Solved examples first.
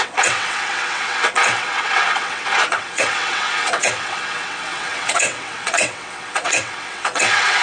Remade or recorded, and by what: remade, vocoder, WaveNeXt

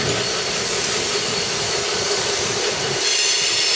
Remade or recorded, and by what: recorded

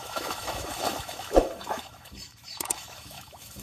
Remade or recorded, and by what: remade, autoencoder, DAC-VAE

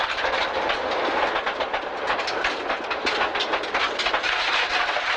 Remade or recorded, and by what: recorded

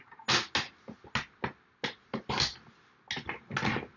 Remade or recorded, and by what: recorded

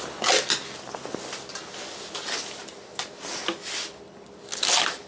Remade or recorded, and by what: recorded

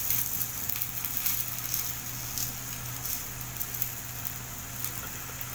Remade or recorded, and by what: recorded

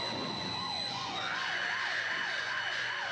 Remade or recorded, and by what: remade, vocoder, Vocos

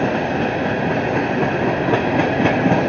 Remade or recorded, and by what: recorded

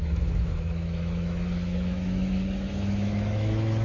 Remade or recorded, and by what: remade, autoencoder, DAC-VAE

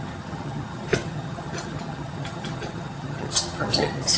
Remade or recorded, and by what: remade, vocoder, HiFi-GAN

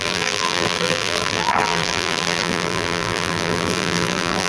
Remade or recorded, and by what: remade, vocoder, BigVGAN v2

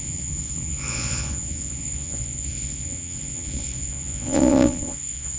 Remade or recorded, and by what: remade, vocoder, Vocos